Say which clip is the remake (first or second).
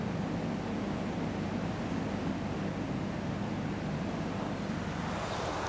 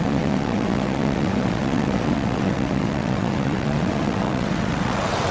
second